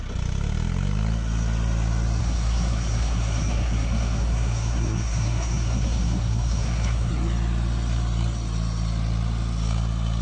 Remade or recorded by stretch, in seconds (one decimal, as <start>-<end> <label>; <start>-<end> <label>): 0.0-2.2 recorded; 2.2-7.1 remade; 7.1-10.2 recorded